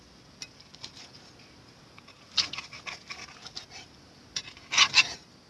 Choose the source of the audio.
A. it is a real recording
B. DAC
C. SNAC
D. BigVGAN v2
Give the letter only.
A